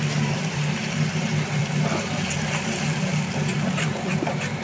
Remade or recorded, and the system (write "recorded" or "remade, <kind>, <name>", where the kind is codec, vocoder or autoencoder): remade, vocoder, BigVGAN v2